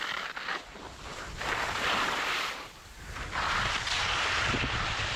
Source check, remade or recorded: recorded